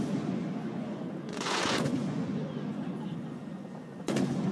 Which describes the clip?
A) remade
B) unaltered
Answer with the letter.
A